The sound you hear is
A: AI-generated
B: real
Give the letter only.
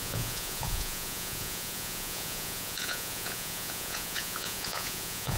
A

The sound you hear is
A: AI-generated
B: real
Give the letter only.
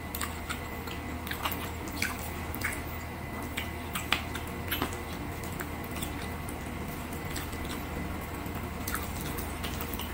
B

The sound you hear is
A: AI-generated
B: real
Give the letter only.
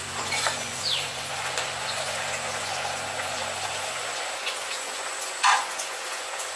A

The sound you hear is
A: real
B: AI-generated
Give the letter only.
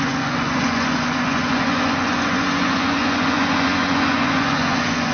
B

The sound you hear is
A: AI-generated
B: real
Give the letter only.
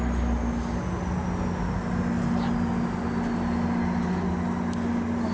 B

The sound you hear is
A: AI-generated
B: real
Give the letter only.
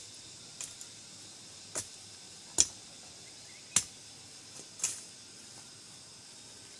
B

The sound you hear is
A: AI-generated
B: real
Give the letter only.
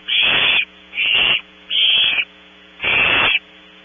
A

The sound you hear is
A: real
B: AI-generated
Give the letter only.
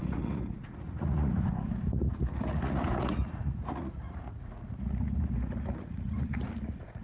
B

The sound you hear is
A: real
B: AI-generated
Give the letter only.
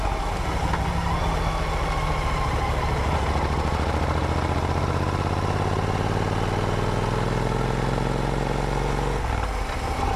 A